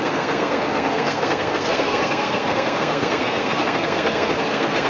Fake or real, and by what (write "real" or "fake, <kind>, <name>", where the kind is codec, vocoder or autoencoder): fake, codec, SNAC